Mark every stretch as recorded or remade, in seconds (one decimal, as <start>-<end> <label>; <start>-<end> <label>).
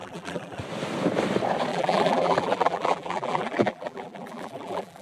0.0-0.6 remade; 0.6-1.7 recorded; 1.7-5.0 remade